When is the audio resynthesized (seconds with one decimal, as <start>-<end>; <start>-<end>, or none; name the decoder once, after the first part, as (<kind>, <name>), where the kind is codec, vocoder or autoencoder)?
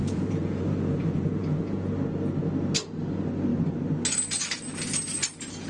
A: 0.0-1.9 (vocoder, Vocos)